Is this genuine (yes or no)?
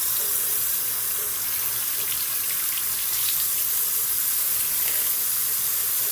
yes